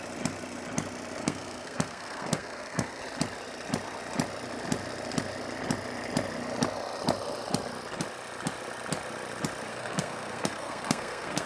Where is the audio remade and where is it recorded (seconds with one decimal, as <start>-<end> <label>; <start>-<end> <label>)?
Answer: 0.0-1.2 recorded; 1.2-3.0 remade; 3.0-9.7 recorded; 9.7-11.5 remade